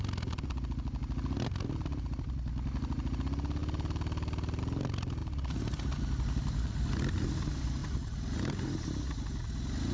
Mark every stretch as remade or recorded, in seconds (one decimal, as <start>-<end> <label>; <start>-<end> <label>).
0.0-5.2 recorded; 5.2-6.0 remade; 6.0-7.8 recorded; 7.8-9.1 remade; 9.1-9.9 recorded